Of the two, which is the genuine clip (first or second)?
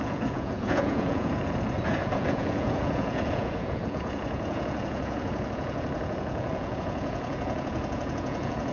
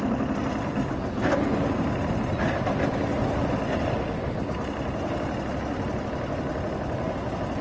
second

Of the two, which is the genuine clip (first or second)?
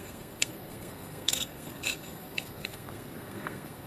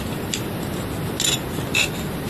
second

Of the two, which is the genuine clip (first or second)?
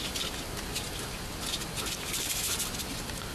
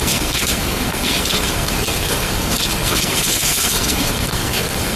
first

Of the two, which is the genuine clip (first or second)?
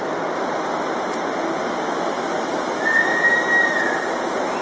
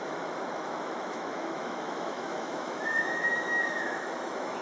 first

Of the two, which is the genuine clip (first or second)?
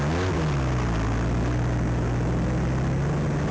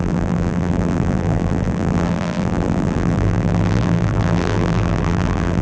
first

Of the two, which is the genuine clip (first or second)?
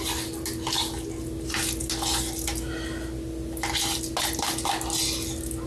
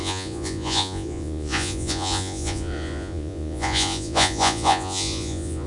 first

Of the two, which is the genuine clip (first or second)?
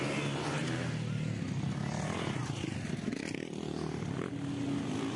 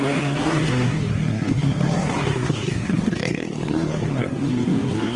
first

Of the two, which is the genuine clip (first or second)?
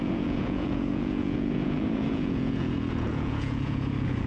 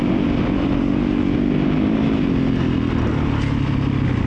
second